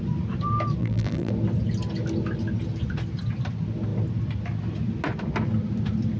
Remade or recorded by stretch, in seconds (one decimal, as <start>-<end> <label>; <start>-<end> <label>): 0.0-0.8 recorded; 0.8-1.3 remade; 1.3-6.2 recorded